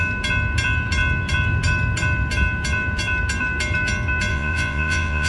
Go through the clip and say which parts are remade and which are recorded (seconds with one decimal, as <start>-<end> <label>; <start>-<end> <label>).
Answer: 0.0-4.3 recorded; 4.3-5.3 remade